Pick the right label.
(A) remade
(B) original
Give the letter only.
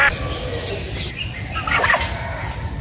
B